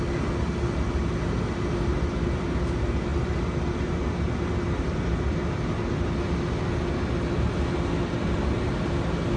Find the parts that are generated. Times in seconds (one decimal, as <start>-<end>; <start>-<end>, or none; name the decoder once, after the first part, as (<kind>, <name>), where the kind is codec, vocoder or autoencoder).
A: none